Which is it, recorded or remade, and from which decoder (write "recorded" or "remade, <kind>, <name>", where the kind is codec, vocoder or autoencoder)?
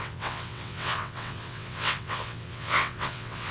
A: remade, vocoder, WaveNeXt